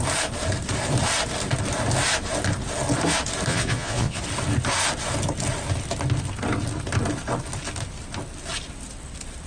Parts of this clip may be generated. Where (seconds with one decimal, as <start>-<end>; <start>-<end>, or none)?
3.5-4.2